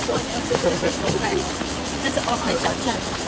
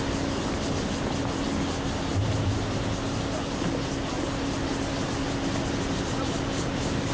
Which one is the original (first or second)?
second